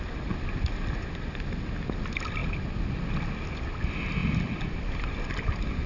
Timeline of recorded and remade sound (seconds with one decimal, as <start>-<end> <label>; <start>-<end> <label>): 0.0-5.9 recorded